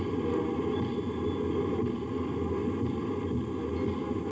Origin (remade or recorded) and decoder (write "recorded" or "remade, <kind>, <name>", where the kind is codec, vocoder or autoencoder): recorded